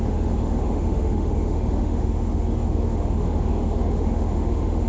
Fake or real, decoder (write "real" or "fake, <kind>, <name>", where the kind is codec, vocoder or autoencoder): fake, autoencoder, DAC-VAE